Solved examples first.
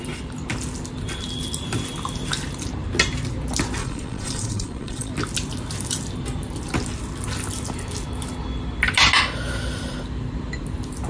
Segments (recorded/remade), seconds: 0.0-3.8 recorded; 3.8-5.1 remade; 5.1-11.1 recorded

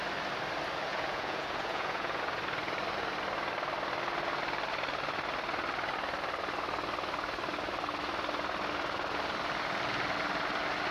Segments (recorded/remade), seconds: 0.0-0.9 recorded; 0.9-2.2 remade; 2.2-10.9 recorded

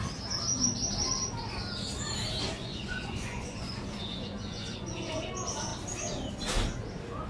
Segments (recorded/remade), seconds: 0.0-2.6 recorded; 2.6-5.3 remade; 5.3-7.3 recorded

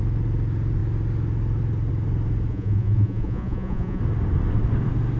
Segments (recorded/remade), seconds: 0.0-2.5 recorded; 2.5-4.0 remade; 4.0-5.2 recorded

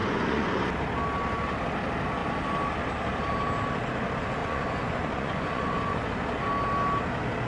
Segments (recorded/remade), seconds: 0.0-0.5 remade; 0.5-4.4 recorded; 4.4-6.0 remade; 6.0-7.5 recorded

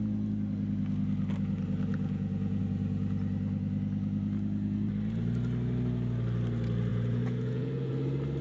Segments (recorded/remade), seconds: 0.0-1.9 recorded; 1.9-2.6 remade; 2.6-6.9 recorded; 6.9-7.9 remade; 7.9-8.4 recorded

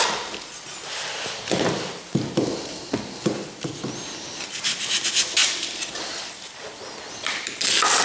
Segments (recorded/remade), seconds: 0.0-8.0 recorded